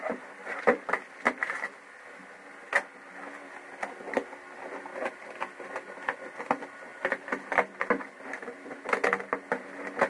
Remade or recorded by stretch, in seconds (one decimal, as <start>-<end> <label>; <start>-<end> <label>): 0.0-10.1 recorded